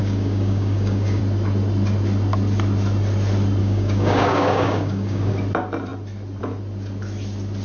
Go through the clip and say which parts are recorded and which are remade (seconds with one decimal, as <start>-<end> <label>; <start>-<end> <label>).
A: 0.0-1.2 remade; 1.2-3.6 recorded; 3.6-5.3 remade; 5.3-7.6 recorded